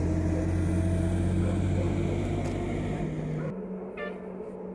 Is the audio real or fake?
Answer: real